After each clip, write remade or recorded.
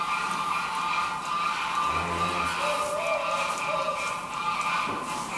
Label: recorded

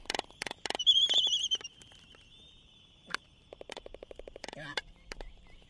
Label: remade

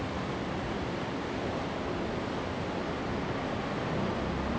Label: recorded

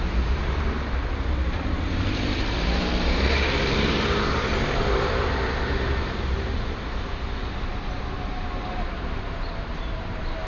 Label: remade